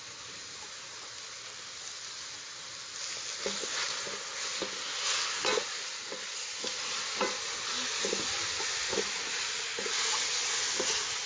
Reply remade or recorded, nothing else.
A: recorded